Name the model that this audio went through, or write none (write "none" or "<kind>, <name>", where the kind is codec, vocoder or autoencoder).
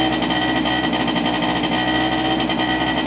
none